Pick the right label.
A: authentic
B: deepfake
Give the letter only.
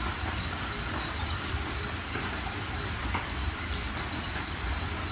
A